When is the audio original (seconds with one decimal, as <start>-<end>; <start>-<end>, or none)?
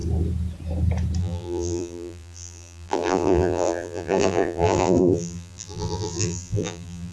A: 0.0-1.2